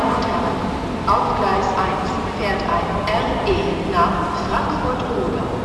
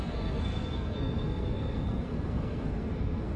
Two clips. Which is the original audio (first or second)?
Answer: first